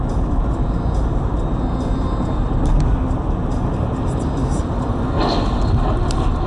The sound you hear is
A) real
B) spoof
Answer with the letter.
A